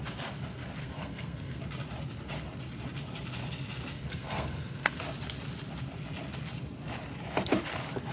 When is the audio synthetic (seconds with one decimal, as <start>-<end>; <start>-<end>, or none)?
0.8-1.6; 3.9-5.0